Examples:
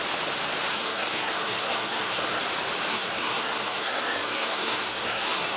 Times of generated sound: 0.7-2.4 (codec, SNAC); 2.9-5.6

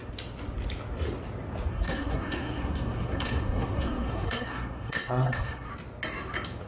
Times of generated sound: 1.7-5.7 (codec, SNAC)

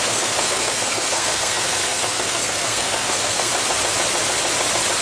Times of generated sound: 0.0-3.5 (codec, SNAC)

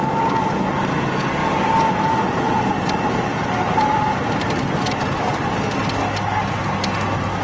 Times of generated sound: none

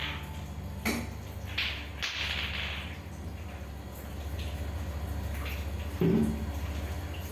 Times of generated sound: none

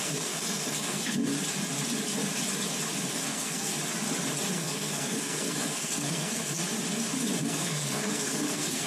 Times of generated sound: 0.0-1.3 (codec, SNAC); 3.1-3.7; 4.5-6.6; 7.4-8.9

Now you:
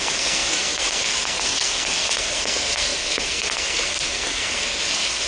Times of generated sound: 0.0-5.3 (codec, SNAC)